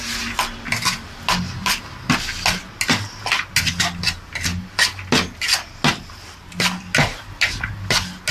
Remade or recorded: recorded